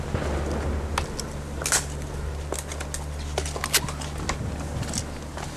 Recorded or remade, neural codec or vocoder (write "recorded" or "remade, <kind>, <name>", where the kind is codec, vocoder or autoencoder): recorded